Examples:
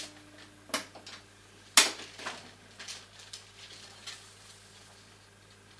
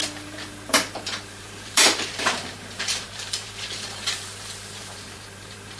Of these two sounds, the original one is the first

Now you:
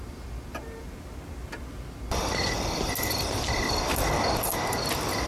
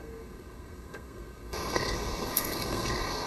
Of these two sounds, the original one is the first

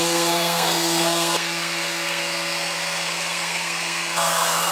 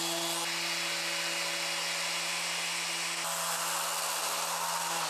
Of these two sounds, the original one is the second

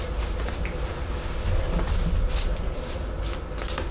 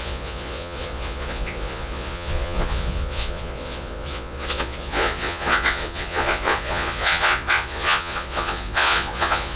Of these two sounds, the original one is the first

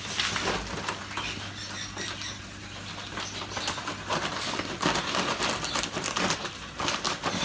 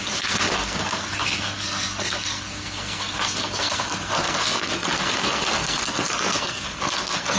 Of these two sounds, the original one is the first